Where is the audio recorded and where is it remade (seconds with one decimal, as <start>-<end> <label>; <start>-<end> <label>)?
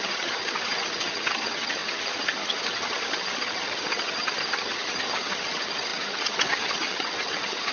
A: 0.0-7.7 remade